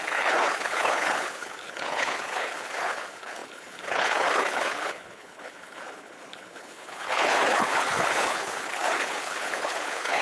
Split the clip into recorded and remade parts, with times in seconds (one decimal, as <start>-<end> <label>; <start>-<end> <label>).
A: 0.0-10.2 remade